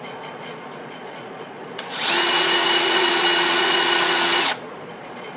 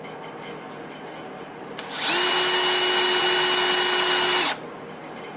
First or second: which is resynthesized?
first